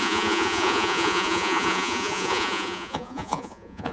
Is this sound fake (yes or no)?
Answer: yes